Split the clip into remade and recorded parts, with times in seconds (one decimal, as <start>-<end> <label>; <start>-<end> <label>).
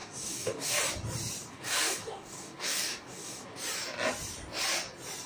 0.0-0.8 remade; 0.8-1.5 recorded; 1.5-3.6 remade; 3.6-5.3 recorded